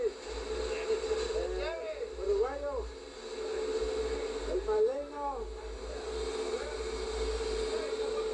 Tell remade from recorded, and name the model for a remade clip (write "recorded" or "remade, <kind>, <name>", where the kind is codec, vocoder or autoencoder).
recorded